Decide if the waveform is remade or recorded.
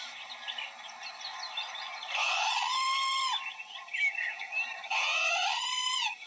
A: recorded